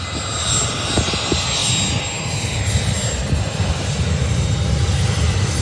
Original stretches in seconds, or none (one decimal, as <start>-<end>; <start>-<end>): 0.0-5.6